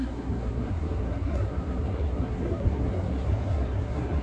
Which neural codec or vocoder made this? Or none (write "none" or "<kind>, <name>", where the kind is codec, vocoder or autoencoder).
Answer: codec, SNAC